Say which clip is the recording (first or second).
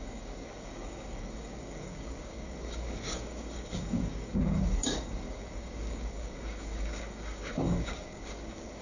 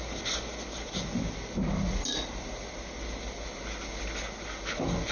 second